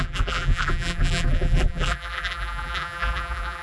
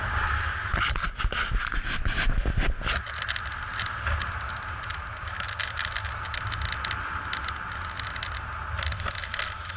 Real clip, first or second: second